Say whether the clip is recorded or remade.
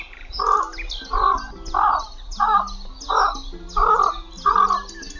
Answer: recorded